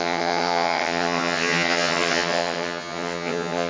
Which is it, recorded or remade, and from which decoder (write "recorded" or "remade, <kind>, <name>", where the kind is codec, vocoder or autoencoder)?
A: remade, vocoder, HiFi-GAN